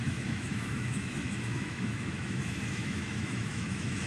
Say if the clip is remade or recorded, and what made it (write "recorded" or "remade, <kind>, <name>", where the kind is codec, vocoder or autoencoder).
remade, autoencoder, DAC-VAE